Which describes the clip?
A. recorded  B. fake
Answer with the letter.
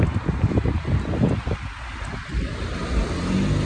A